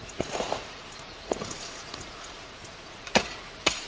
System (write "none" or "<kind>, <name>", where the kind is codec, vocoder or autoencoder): vocoder, Vocos